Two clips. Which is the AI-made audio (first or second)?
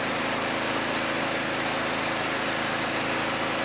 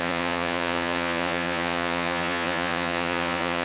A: second